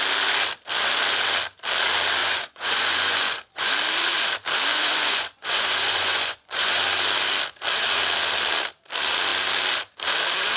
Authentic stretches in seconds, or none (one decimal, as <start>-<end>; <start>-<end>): 0.0-2.2; 3.7-4.7; 6.8-10.6